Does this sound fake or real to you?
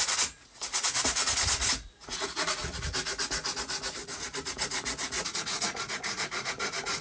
fake